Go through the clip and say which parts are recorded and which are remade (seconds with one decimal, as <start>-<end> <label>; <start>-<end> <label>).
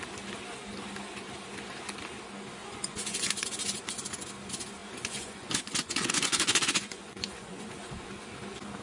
0.0-2.6 recorded; 2.6-3.8 remade; 3.8-4.8 recorded; 4.8-7.9 remade; 7.9-8.8 recorded